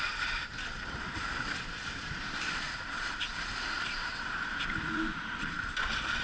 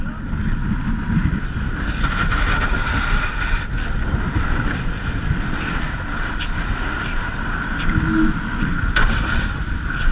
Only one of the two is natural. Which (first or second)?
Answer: second